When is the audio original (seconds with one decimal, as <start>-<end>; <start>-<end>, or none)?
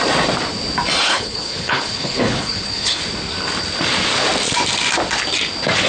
0.0-1.0; 3.0-5.9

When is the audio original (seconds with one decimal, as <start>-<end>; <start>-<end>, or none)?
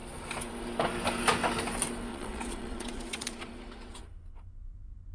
0.0-2.1; 4.0-5.1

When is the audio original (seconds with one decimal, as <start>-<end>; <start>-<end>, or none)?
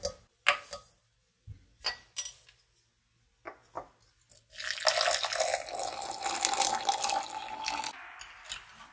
0.0-8.9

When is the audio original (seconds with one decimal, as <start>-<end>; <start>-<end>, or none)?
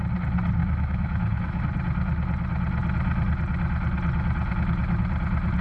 0.0-0.6; 1.6-5.6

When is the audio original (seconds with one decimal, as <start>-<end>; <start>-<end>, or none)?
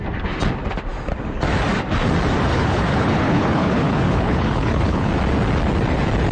0.0-2.5; 5.1-6.3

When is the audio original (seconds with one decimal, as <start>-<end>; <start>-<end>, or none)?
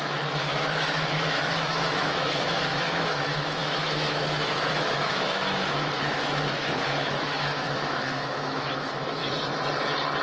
9.2-10.2